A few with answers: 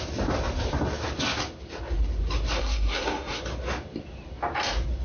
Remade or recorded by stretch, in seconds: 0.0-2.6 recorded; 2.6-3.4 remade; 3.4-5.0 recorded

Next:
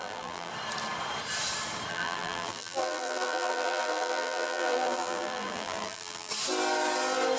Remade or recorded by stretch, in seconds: 0.0-0.5 remade; 0.5-1.9 recorded; 1.9-6.3 remade; 6.3-7.4 recorded

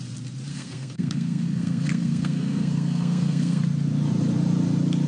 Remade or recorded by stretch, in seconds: 0.0-0.5 recorded; 0.5-3.6 remade; 3.6-5.1 recorded

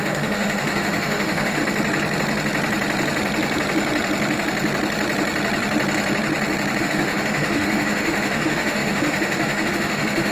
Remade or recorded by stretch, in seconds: 0.0-1.6 remade; 1.6-6.8 recorded; 6.8-10.3 remade

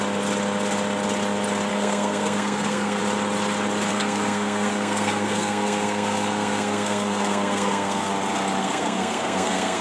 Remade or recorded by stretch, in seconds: 0.0-1.7 recorded; 1.7-3.0 remade; 3.0-3.9 recorded; 3.9-8.1 remade; 8.1-8.6 recorded; 8.6-9.8 remade